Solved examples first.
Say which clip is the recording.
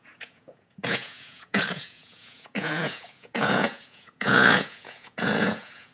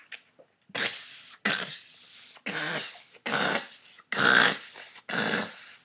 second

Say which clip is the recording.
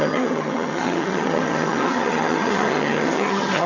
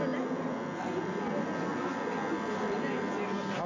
second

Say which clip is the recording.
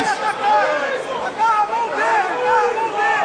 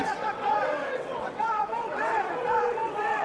first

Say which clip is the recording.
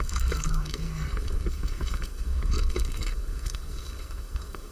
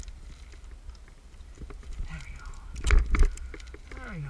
second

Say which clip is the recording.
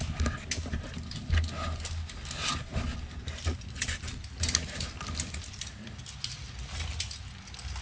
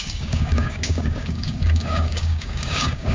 first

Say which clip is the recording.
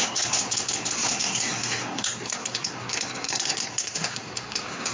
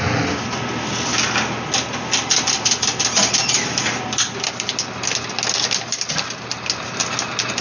second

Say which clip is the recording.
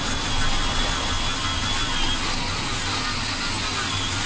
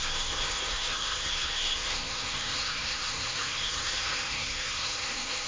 first